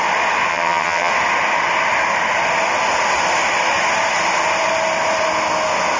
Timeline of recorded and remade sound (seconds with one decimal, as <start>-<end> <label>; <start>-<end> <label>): 0.0-0.5 recorded; 0.5-1.1 remade; 1.1-6.0 recorded